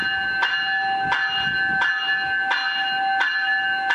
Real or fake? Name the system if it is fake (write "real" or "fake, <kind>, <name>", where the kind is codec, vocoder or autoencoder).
real